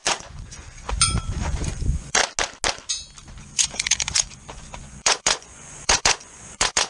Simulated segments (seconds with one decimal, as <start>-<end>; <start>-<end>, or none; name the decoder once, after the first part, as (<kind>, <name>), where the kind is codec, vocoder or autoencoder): 0.0-2.2 (vocoder, Vocos); 3.4-6.9